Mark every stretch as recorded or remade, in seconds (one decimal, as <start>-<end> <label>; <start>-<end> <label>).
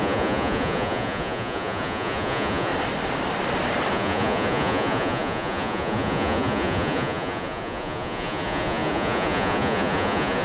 0.0-2.7 remade; 2.7-3.9 recorded; 3.9-10.4 remade